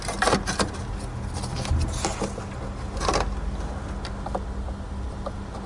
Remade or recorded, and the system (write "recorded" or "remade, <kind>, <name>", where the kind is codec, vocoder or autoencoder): recorded